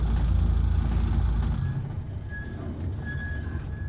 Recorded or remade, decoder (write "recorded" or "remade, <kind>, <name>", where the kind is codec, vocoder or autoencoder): recorded